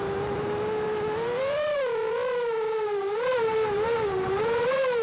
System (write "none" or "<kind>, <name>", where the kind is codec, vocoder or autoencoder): vocoder, BigVGAN v2